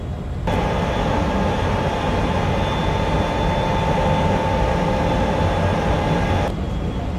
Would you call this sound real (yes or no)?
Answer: yes